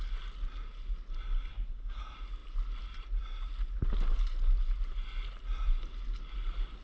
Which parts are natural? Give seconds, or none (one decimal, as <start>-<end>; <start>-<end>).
0.0-1.5; 2.0-6.8